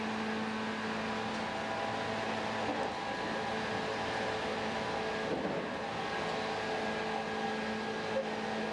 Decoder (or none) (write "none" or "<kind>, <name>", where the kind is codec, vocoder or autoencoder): none